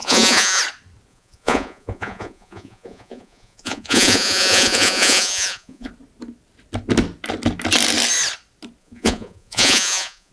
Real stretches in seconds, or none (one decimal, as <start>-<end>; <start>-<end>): 0.6-1.1; 5.9-8.8